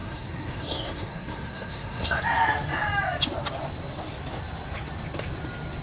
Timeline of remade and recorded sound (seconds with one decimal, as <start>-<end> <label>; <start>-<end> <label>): 0.0-2.2 remade; 2.2-5.8 recorded